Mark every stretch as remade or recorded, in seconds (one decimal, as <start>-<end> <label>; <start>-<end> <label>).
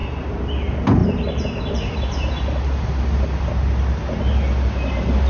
0.0-5.3 recorded